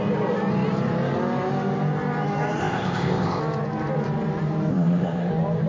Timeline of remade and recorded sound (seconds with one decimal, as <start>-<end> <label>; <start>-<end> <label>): 0.0-2.6 recorded; 2.6-3.4 remade; 3.4-4.7 recorded; 4.7-5.3 remade; 5.3-5.7 recorded